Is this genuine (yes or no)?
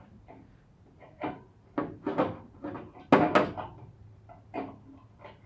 yes